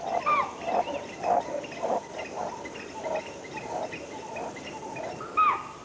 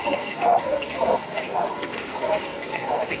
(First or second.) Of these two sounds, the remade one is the second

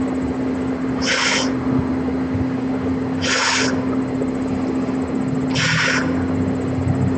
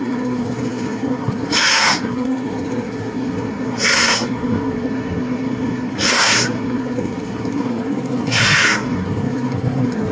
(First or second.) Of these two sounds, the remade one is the second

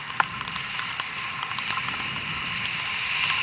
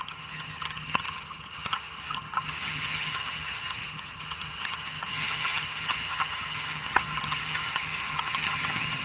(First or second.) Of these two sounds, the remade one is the second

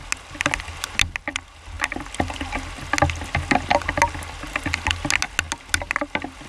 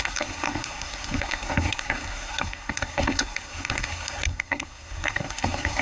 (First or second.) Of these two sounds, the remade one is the second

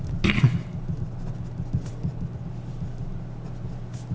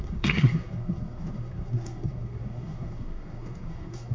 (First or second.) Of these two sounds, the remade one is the second